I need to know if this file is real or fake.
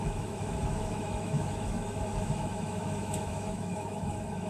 fake